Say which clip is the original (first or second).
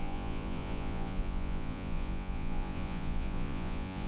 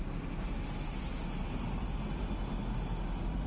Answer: second